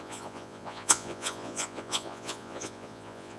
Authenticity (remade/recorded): remade